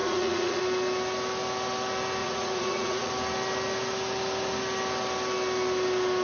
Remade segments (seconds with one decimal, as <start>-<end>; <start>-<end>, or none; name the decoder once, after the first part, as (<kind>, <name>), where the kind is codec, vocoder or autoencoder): 0.0-0.6 (vocoder, Vocos); 2.2-3.1